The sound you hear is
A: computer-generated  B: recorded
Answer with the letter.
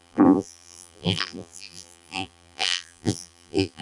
A